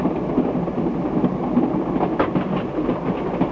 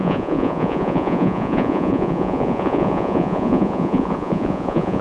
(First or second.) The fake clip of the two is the second